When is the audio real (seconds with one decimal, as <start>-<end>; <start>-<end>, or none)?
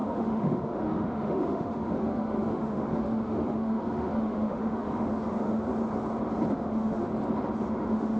5.7-6.5; 7.1-7.7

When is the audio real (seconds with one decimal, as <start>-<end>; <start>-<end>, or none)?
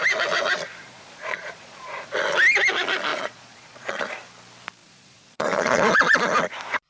0.0-0.7; 2.1-3.1; 4.0-4.8; 6.2-6.9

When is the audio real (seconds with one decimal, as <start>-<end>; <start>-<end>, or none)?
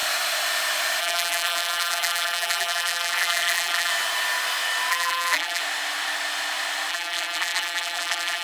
0.0-1.0; 3.9-4.9; 5.6-6.9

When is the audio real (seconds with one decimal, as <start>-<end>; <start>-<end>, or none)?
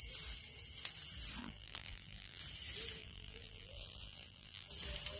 0.0-1.4; 2.4-3.0; 4.7-5.2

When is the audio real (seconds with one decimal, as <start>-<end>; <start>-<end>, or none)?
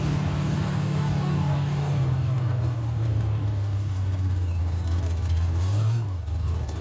none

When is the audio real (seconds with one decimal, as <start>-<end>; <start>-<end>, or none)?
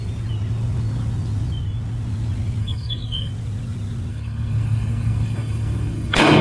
0.0-2.6; 3.3-4.1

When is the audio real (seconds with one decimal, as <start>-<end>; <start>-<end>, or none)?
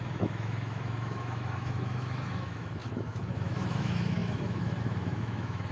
none